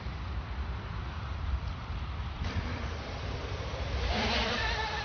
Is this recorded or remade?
remade